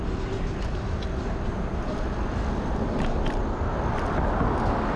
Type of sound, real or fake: real